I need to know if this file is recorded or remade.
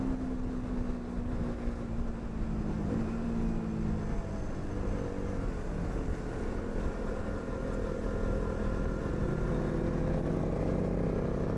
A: recorded